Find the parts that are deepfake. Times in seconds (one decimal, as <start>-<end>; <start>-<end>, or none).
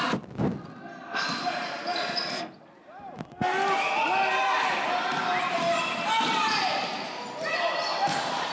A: none